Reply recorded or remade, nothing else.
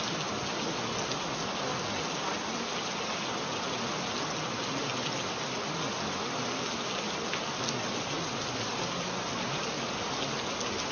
recorded